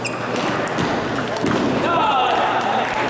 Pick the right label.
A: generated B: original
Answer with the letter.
B